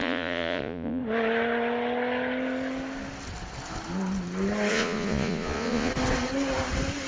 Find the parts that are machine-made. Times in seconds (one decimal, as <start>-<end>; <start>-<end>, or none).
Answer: 0.0-1.0; 4.7-5.9